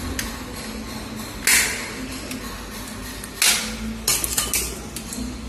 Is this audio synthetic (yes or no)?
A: no